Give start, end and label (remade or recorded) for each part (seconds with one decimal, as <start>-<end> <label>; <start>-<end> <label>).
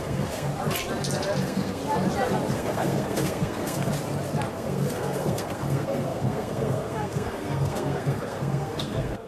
0.0-0.5 remade; 0.5-1.4 recorded; 1.4-1.8 remade; 1.8-2.5 recorded; 2.5-3.9 remade; 3.9-4.5 recorded; 4.5-9.3 remade